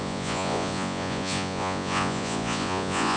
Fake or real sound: fake